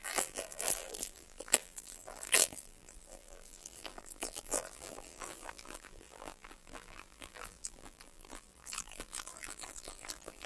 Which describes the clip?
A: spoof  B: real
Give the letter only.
A